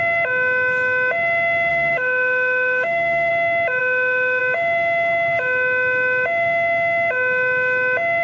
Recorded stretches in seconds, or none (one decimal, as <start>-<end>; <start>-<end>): 0.0-1.7; 3.3-3.8; 4.4-8.2

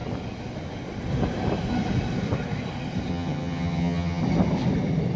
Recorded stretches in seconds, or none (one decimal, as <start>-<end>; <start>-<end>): 0.0-3.1; 4.2-5.2

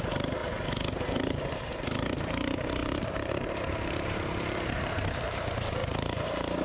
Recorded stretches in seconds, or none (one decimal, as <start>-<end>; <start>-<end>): 0.4-1.2; 5.8-6.6

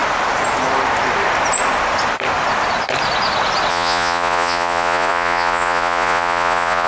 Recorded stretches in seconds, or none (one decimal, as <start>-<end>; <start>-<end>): 0.0-3.7